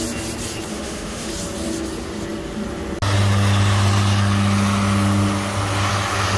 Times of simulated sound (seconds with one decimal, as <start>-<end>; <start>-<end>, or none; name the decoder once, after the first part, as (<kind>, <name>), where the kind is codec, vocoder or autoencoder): 0.7-1.3 (autoencoder, DAC-VAE)